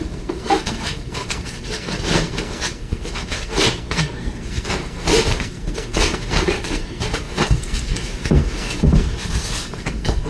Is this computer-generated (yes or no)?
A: yes